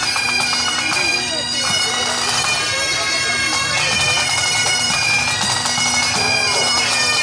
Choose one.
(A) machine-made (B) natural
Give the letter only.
B